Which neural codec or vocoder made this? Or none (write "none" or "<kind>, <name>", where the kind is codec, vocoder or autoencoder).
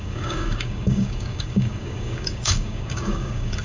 codec, DAC